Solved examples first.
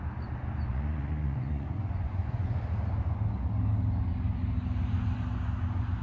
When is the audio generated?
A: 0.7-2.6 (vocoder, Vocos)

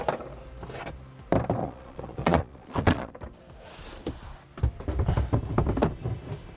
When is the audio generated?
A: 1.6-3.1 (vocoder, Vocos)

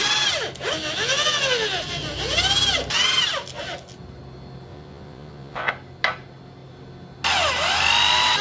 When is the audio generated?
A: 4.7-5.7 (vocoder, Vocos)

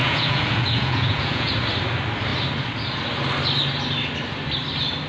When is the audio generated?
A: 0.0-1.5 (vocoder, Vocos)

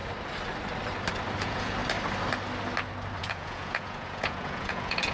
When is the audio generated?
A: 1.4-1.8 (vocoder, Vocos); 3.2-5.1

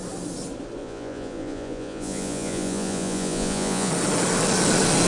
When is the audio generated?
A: 0.8-3.9 (vocoder, Vocos)